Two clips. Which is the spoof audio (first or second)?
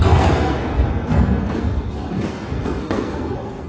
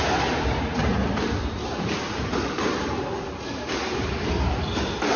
first